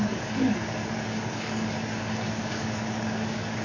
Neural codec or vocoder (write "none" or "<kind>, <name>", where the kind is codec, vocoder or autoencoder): codec, DAC